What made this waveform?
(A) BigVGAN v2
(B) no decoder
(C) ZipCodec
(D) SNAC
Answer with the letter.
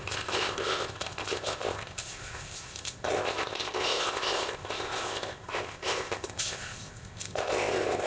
C